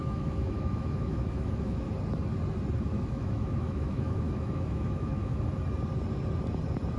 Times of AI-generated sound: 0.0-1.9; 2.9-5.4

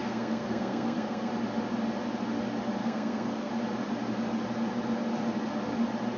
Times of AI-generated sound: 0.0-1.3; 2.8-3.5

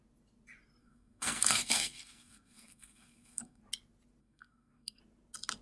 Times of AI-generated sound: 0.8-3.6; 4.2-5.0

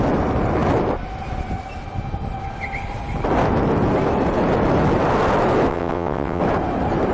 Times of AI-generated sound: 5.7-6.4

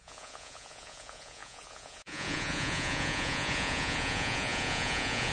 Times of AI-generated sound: 0.0-5.3

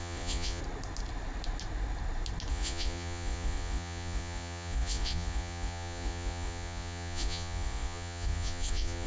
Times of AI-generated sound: 0.0-0.6; 2.5-9.1